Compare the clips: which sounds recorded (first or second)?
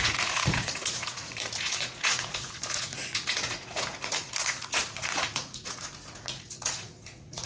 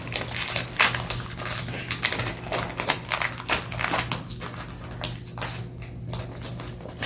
second